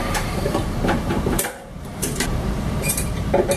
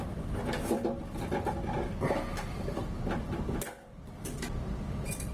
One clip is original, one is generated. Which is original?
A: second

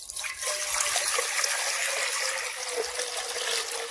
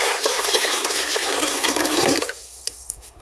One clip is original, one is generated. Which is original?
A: first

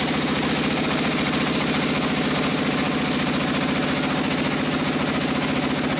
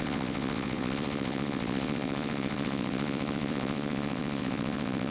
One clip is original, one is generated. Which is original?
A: first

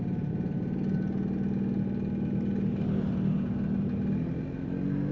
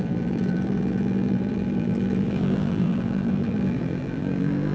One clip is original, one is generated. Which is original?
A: first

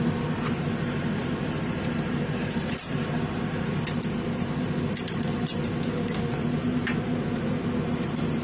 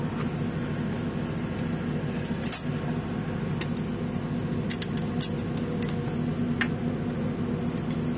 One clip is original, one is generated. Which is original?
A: second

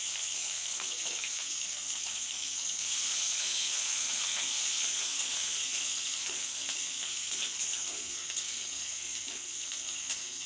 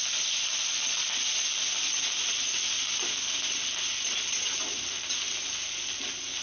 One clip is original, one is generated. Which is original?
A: second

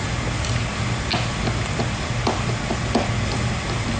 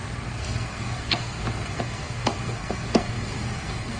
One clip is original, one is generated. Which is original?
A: first